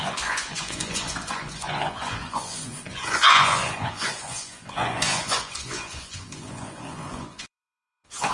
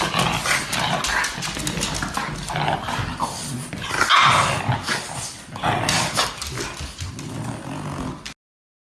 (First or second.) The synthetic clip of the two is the first